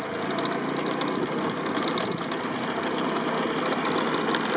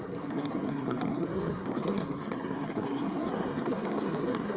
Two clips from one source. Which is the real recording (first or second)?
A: first